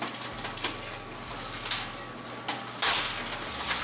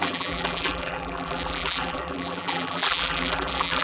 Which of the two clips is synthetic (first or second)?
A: second